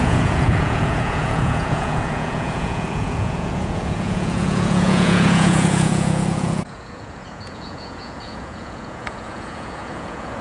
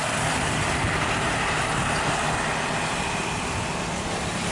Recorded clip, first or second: second